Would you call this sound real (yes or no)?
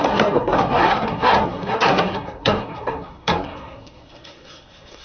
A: no